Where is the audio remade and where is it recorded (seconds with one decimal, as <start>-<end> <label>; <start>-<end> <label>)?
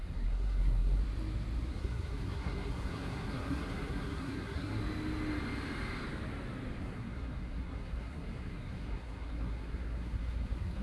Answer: 0.0-1.0 remade; 1.0-1.7 recorded; 1.7-4.8 remade; 4.8-6.8 recorded; 6.8-10.8 remade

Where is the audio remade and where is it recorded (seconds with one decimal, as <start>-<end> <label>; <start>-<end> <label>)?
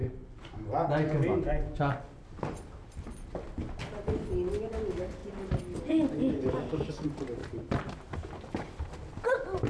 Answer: 0.0-9.7 recorded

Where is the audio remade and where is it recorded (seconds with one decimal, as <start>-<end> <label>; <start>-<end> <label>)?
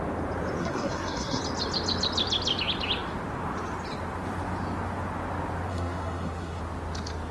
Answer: 0.0-0.6 recorded; 0.6-1.4 remade; 1.4-5.7 recorded; 5.7-6.6 remade; 6.6-7.3 recorded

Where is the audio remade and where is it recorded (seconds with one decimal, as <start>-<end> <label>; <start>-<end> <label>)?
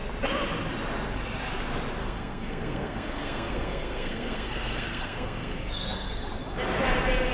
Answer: 0.0-2.0 recorded; 2.0-6.4 remade; 6.4-7.3 recorded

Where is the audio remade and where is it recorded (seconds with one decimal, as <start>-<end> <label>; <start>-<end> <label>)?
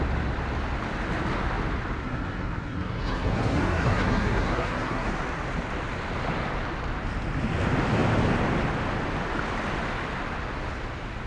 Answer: 0.0-2.0 recorded; 2.0-5.1 remade; 5.1-11.3 recorded